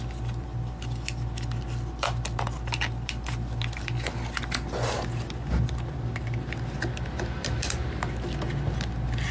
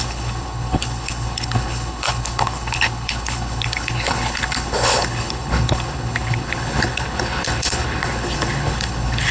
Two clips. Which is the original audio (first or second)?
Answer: first